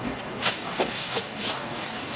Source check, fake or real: fake